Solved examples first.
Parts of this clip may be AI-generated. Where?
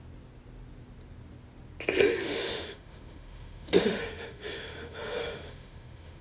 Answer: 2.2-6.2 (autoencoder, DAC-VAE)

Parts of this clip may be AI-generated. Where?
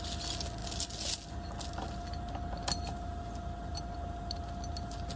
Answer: none